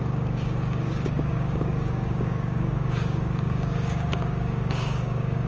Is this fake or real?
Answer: fake